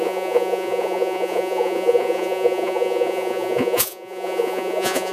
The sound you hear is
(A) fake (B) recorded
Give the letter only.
A